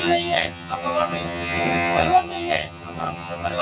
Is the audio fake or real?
fake